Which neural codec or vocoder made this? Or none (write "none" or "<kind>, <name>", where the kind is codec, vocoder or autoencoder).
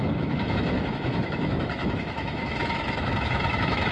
autoencoder, DAC-VAE